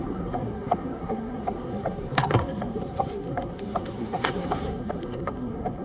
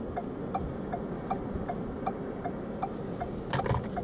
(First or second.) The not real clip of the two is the first